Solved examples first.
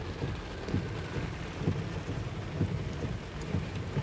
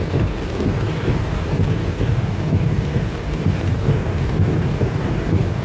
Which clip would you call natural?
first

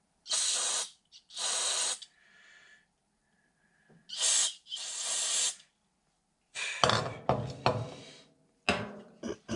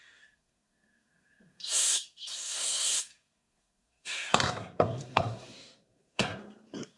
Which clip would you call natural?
first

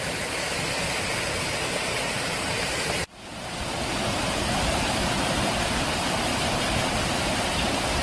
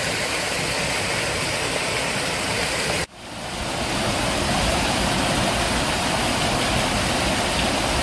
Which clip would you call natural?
second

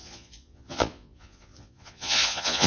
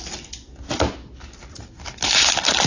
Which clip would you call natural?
second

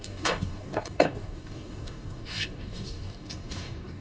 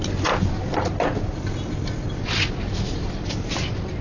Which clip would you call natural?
second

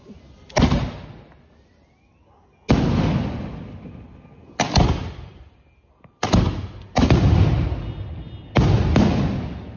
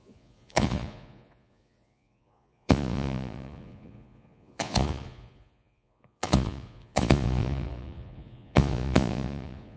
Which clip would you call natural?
first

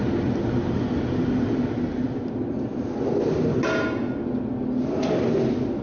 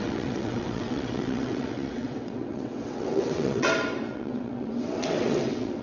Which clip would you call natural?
first